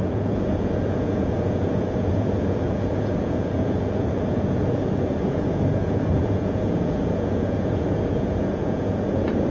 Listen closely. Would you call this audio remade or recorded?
remade